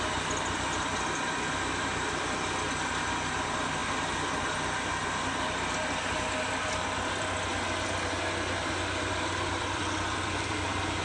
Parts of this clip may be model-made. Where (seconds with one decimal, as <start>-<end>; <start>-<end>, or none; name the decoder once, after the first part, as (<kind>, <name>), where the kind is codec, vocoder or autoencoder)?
0.0-3.8 (vocoder, BigVGAN v2); 7.1-7.5; 9.1-11.0